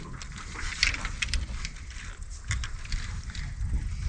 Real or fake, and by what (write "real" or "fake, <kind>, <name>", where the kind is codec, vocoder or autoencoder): real